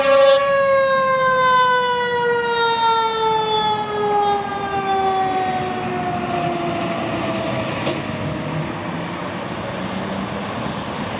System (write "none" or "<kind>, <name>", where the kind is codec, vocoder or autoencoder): none